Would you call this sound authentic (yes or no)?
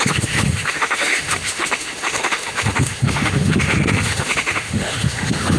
no